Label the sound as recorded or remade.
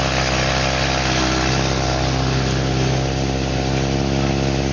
recorded